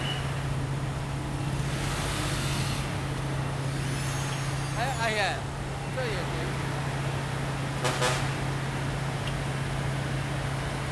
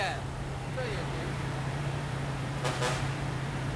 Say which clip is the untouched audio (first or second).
first